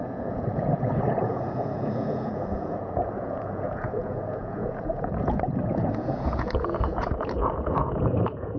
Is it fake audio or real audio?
fake